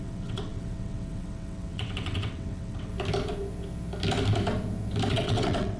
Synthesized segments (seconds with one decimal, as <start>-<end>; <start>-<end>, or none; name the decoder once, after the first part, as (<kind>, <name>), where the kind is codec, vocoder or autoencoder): 0.0-2.9 (vocoder, WaveNeXt); 5.1-5.8